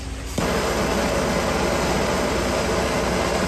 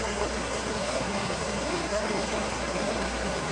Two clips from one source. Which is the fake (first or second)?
second